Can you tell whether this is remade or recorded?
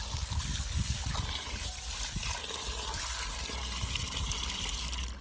recorded